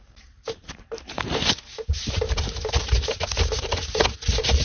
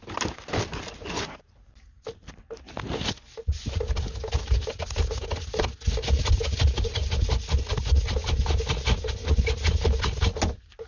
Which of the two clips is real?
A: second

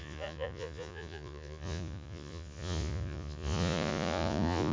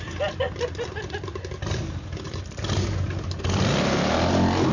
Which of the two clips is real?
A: second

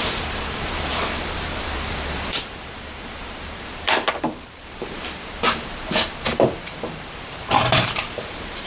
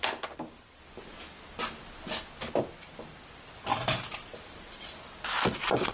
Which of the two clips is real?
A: second